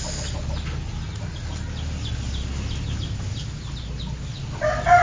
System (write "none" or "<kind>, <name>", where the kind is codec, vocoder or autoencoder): none